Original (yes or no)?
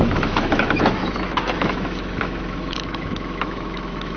no